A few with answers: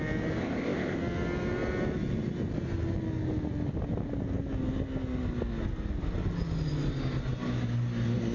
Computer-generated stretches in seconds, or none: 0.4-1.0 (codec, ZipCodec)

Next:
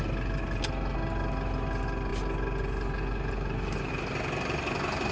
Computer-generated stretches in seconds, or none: none

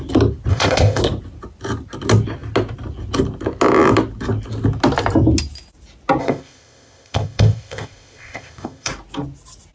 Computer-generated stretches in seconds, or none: 0.5-1.0 (codec, ZipCodec); 6.2-8.9